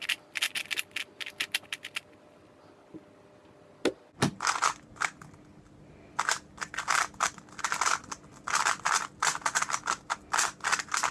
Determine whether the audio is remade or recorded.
recorded